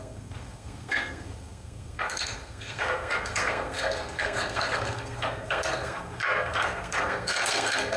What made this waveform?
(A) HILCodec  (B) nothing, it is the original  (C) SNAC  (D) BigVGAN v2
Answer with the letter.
C